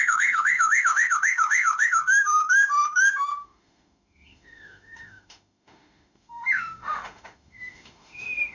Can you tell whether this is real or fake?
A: fake